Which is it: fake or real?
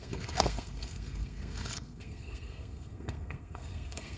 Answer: fake